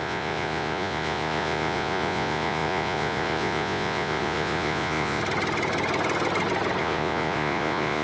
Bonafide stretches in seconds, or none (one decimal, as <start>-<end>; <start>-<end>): 5.2-6.8